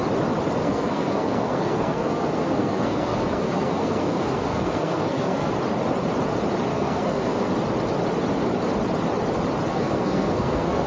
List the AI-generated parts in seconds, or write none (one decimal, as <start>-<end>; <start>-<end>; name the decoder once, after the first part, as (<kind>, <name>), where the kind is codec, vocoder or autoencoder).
0.6-5.5 (codec, SNAC); 6.7-7.5; 9.7-10.9